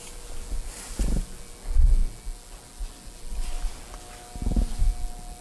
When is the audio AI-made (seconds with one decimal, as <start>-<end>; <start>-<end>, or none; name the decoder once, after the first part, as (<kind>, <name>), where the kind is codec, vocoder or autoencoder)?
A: none